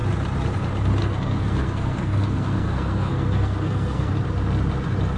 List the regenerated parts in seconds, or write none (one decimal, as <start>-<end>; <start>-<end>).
1.0-4.1